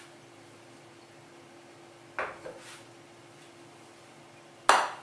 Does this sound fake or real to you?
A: real